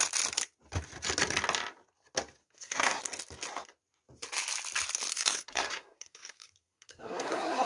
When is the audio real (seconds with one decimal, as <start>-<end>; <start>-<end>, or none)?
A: 0.0-2.4; 3.0-5.1